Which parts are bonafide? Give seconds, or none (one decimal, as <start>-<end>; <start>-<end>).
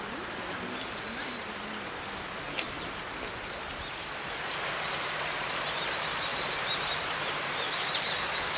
0.0-6.3; 7.8-8.6